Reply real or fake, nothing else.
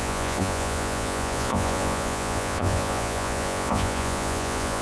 fake